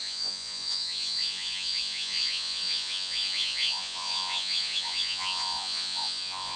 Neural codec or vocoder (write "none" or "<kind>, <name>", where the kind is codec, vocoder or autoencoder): vocoder, Vocos